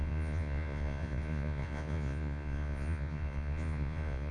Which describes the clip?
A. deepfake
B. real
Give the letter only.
A